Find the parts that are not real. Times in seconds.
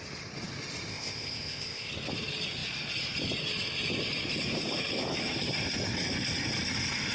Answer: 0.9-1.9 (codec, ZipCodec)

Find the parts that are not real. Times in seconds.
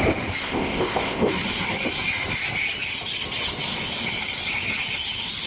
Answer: 0.4-1.3 (codec, ZipCodec)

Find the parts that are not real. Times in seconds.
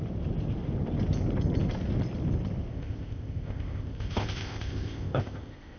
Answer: 2.7-5.8 (codec, ZipCodec)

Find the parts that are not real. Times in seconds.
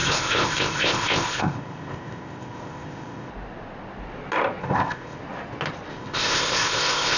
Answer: 0.0-3.3 (codec, ZipCodec); 4.6-5.2; 5.9-7.2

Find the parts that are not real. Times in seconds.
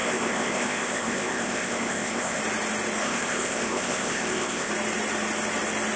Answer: 0.0-2.4 (codec, ZipCodec); 3.0-4.7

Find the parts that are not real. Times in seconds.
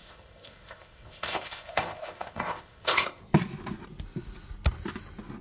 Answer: 0.0-3.2 (codec, ZipCodec)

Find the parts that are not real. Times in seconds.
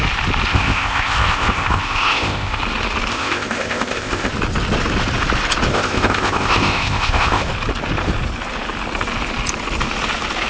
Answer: 0.5-2.6 (codec, ZipCodec); 3.1-4.3; 5.7-7.5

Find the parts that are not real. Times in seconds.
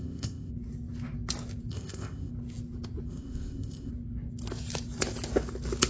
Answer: 0.0-0.5 (codec, ZipCodec); 1.7-2.3; 3.1-3.9